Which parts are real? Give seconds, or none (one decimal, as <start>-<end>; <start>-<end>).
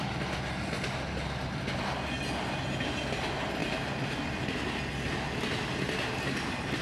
0.0-6.8